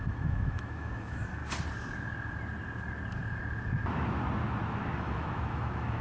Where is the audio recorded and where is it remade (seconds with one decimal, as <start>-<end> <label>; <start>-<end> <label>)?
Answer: 0.0-1.4 remade; 1.4-5.0 recorded; 5.0-6.0 remade